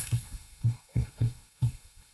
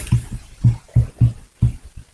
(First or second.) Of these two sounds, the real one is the second